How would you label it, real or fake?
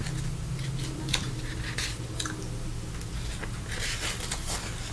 real